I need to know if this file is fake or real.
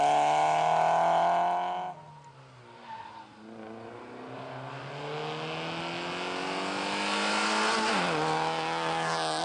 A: real